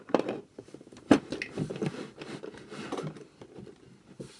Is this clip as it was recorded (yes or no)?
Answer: yes